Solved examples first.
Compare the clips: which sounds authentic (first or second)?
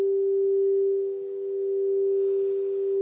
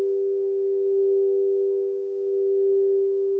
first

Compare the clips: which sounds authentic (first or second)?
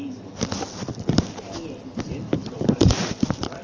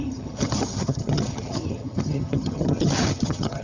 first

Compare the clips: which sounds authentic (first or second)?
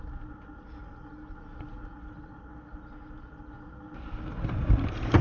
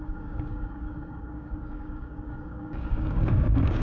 first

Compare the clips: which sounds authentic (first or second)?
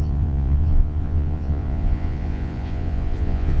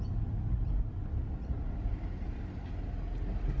second